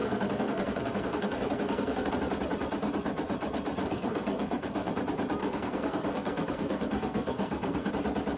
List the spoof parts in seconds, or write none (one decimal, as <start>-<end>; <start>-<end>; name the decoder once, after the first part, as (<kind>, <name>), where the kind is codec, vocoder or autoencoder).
0.0-2.1 (codec, SNAC); 3.8-4.9; 5.4-7.9